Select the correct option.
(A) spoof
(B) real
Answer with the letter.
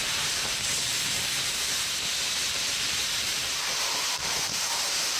A